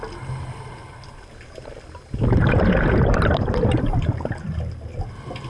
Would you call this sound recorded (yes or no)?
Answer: yes